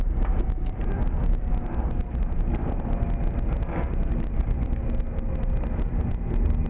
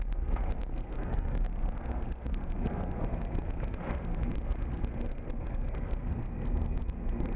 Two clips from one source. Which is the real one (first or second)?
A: first